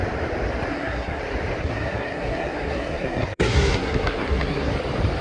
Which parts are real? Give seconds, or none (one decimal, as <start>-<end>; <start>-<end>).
0.0-0.7; 1.2-1.6; 4.7-5.2